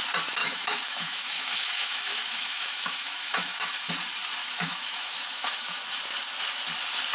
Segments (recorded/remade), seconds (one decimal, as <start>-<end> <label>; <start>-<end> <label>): 0.0-0.4 recorded; 0.4-3.9 remade; 3.9-4.4 recorded; 4.4-5.8 remade; 5.8-7.1 recorded